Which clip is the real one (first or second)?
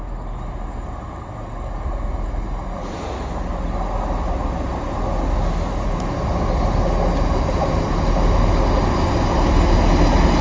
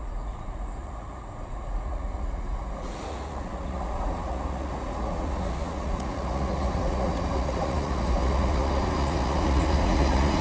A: first